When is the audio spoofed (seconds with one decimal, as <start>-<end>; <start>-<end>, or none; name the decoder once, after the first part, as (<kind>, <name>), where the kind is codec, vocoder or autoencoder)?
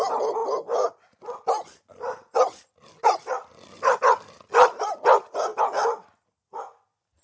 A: none